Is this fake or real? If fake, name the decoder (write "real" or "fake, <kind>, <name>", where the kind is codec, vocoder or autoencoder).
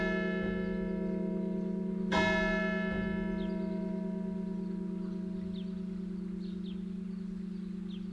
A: real